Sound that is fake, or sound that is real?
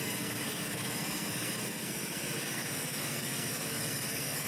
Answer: fake